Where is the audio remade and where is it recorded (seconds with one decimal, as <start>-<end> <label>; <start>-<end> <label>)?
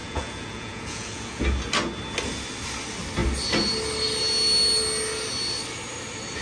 0.0-1.4 remade; 1.4-6.4 recorded